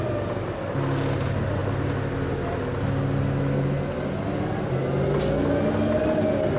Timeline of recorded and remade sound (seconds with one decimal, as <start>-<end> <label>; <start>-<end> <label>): 0.0-6.6 recorded